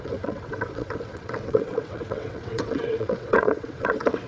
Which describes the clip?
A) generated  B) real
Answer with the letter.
A